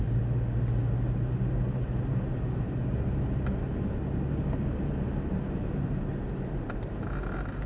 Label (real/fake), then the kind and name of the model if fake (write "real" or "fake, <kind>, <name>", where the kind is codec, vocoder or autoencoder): real